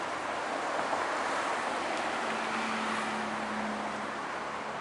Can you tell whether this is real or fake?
real